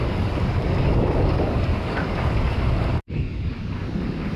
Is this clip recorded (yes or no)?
no